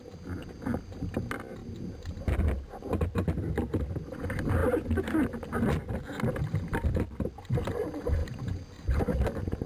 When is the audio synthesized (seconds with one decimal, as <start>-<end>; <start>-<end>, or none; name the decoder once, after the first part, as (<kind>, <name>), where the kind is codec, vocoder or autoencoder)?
none